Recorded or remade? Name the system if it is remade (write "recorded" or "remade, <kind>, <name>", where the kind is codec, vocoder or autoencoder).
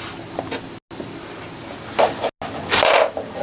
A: recorded